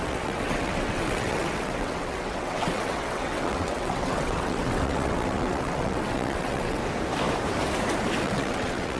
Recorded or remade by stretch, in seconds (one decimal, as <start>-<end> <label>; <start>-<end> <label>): 0.0-6.8 remade; 6.8-8.2 recorded; 8.2-9.0 remade